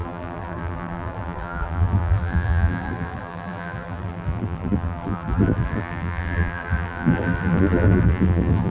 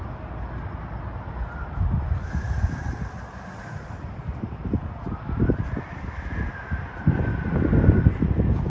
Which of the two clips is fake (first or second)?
first